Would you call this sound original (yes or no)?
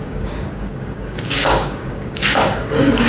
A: no